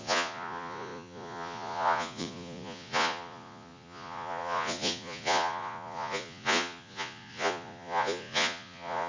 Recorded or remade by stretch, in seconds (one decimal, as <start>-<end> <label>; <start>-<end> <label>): 0.0-9.1 remade